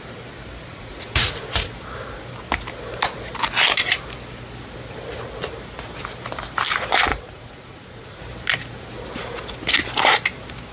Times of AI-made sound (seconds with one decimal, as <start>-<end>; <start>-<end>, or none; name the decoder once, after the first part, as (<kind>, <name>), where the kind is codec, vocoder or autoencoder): 0.7-1.4 (vocoder, Vocos); 7.1-8.2